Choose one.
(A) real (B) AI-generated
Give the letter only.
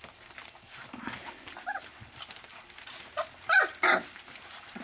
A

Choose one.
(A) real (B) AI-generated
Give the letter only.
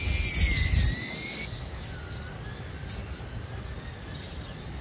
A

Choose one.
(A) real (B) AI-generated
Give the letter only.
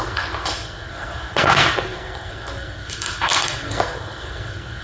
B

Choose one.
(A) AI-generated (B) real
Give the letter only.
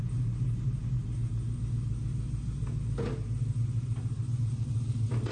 B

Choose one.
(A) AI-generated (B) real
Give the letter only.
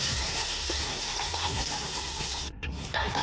A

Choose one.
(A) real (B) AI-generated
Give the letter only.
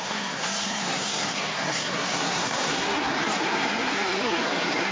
B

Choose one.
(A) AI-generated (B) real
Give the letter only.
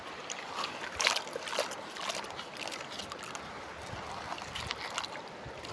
B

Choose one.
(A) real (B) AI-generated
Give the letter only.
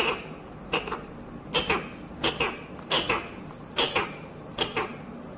A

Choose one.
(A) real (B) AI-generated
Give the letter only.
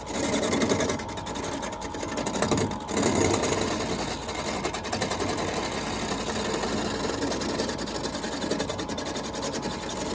A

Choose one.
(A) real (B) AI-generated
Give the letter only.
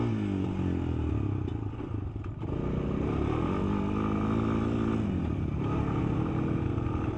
A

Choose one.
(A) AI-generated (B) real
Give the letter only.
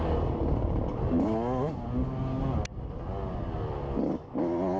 B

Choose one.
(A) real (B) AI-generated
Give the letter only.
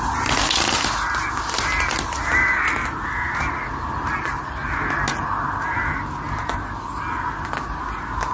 A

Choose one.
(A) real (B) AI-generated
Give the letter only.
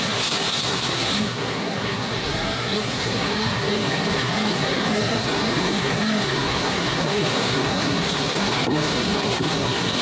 B